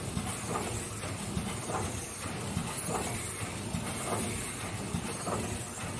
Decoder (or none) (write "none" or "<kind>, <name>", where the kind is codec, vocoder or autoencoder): none